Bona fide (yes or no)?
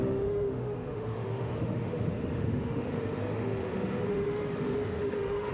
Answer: no